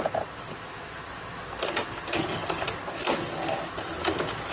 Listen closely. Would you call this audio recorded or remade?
recorded